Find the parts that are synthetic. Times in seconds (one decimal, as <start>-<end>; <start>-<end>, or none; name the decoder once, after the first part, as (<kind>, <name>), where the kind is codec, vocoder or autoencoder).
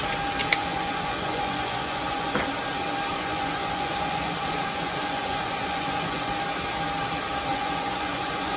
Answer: 0.6-2.4 (vocoder, Vocos); 3.1-6.3; 7.5-8.6